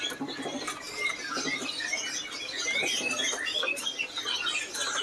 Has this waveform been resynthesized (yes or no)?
no